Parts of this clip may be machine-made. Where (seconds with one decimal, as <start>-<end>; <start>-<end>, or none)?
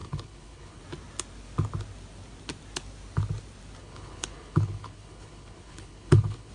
0.0-0.8; 3.8-6.5